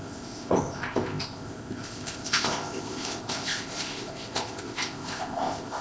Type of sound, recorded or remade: remade